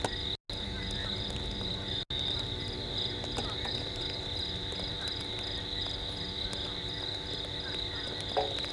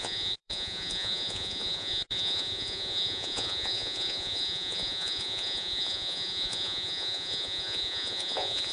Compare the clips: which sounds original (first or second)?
first